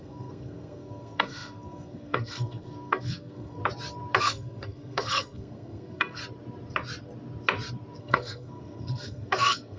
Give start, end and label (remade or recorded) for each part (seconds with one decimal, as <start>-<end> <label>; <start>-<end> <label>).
0.0-3.6 remade; 3.6-4.2 recorded; 4.2-6.2 remade; 6.2-8.0 recorded; 8.0-9.8 remade